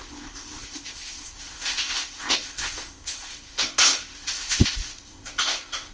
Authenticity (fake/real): fake